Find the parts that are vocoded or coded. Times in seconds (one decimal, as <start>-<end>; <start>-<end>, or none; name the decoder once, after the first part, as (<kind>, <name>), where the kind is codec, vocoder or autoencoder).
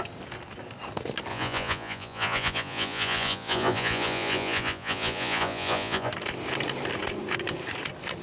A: 1.3-6.1 (vocoder, Vocos)